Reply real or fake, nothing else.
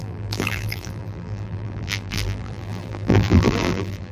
fake